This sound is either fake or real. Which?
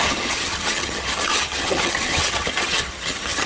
fake